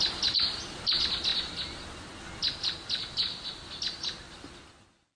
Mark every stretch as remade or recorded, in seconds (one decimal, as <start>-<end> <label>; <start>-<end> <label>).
0.0-5.2 recorded